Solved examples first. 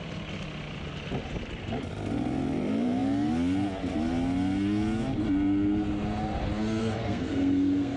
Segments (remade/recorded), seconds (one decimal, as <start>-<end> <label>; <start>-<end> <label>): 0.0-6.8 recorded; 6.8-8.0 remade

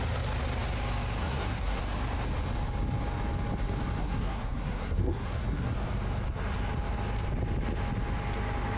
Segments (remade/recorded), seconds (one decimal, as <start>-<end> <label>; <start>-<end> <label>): 0.0-1.2 recorded; 1.2-1.8 remade; 1.8-4.0 recorded; 4.0-5.7 remade; 5.7-8.8 recorded

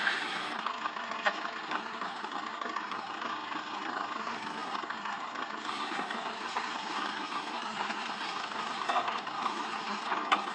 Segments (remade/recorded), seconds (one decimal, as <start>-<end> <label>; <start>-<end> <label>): 0.0-10.5 remade

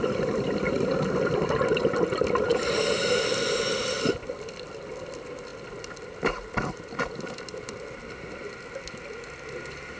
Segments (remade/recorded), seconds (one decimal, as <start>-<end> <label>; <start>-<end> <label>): 0.0-10.0 recorded

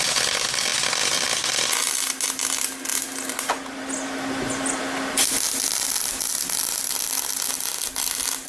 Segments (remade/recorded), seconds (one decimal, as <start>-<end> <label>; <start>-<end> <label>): 0.0-8.5 recorded

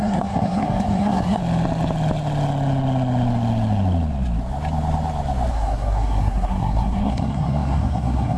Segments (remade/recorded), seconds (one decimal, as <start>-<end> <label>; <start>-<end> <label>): 0.0-1.4 remade; 1.4-5.5 recorded; 5.5-8.4 remade